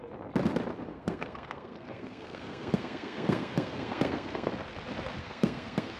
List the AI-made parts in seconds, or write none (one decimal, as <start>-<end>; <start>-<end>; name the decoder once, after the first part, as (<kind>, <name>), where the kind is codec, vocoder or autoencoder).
0.9-4.5 (codec, SNAC); 5.2-6.0